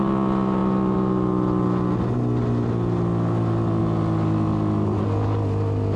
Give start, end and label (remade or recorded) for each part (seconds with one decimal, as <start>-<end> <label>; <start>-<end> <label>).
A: 0.0-6.0 recorded